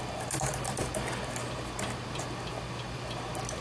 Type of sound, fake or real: real